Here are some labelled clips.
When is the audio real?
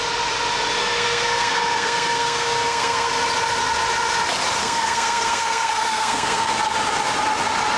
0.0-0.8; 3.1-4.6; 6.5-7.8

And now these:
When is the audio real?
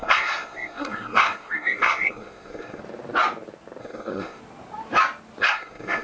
2.8-3.8; 4.4-5.4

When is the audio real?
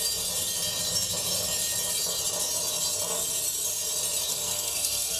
0.0-4.3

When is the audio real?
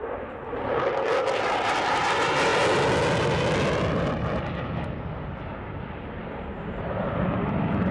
0.0-7.9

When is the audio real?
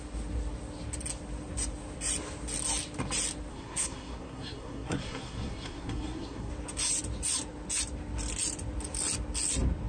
0.0-3.5; 6.5-9.9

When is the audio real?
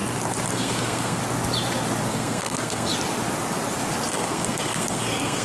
0.0-0.5; 1.2-2.1; 2.9-4.1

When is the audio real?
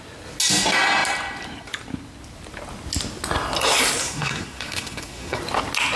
0.0-4.0; 5.4-6.0